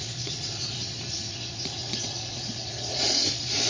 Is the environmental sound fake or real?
fake